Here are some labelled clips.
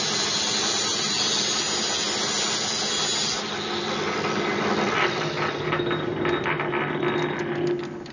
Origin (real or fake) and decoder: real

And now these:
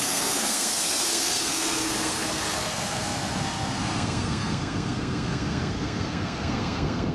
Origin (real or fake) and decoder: fake, codec, SNAC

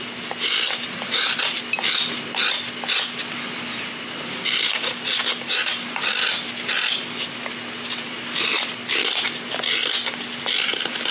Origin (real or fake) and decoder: real